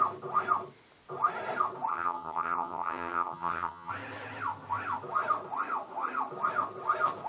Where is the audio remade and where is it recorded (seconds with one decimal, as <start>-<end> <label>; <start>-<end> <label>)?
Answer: 0.0-1.9 recorded; 1.9-3.9 remade; 3.9-7.3 recorded